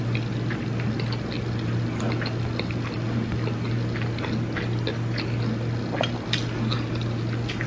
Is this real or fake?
real